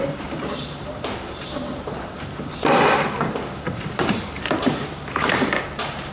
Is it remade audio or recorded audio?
remade